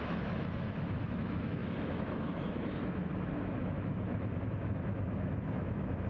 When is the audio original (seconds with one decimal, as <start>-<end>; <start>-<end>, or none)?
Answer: none